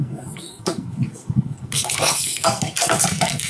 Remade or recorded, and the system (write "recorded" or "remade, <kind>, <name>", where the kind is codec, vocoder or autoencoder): remade, codec, SNAC